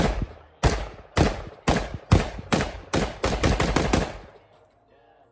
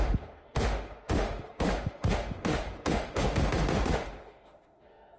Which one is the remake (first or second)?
second